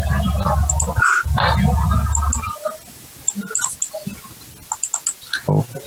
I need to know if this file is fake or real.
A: real